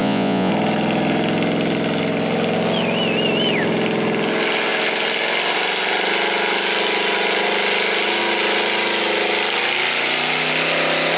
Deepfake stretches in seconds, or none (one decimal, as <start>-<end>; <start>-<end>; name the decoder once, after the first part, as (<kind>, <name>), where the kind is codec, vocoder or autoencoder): 0.0-0.5 (vocoder, Vocos)